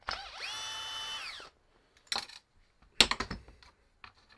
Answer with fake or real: real